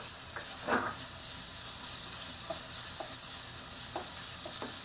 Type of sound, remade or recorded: recorded